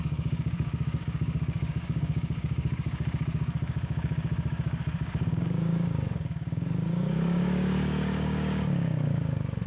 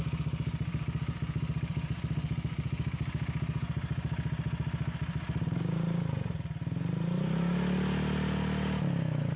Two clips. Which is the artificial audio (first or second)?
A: first